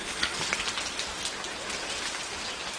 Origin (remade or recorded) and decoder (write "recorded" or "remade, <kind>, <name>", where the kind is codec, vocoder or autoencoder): recorded